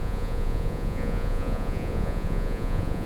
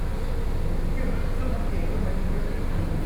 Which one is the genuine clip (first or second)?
second